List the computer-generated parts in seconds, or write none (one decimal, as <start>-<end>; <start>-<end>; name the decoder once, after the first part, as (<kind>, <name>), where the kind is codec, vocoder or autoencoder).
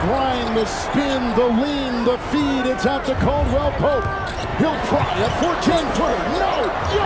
4.5-5.1 (vocoder, Vocos); 6.1-6.6